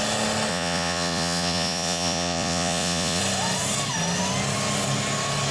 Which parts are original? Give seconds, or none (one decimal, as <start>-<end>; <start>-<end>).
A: 0.0-0.5; 3.2-5.5